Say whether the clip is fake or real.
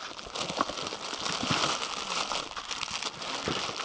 real